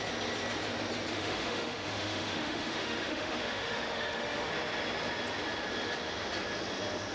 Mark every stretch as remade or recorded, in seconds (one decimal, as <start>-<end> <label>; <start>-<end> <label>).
0.0-1.1 recorded; 1.1-4.5 remade; 4.5-7.1 recorded